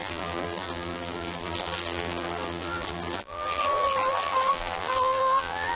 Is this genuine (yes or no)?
no